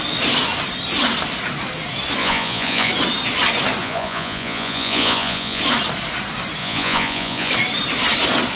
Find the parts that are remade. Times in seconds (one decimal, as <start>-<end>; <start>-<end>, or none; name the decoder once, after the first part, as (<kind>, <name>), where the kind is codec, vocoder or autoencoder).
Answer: 2.2-2.9 (vocoder, Vocos); 3.8-5.6; 6.6-7.5